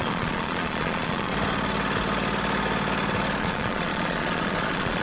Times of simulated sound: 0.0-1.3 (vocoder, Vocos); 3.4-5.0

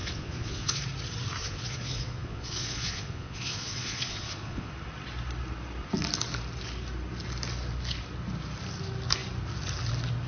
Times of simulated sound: 0.0-0.8 (vocoder, Vocos); 1.4-4.7

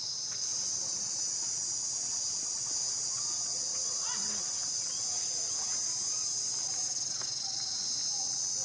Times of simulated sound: 0.5-1.2 (vocoder, Vocos); 3.7-4.7

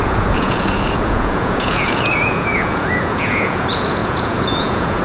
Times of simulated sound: 0.0-5.0 (vocoder, Vocos)